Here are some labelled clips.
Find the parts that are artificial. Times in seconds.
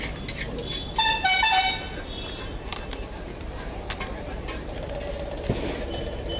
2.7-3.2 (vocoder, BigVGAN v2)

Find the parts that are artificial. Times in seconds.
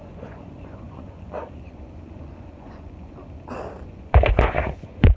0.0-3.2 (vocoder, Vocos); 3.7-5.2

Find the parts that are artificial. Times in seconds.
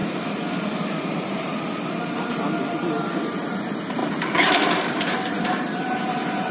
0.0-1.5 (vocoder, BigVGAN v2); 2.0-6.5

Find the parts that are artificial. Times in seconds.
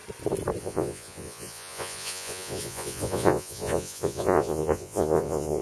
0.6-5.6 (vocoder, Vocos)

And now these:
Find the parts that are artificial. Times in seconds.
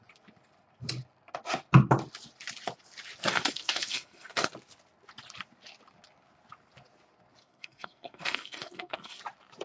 3.3-4.5 (codec, SNAC); 7.4-9.2